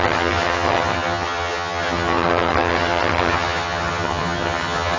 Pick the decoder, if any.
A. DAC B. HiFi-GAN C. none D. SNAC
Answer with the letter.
B